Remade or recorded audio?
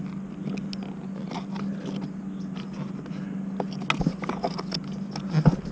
recorded